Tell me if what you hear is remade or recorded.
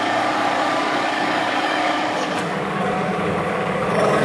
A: remade